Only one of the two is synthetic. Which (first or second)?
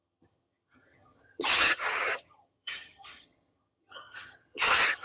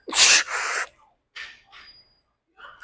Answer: first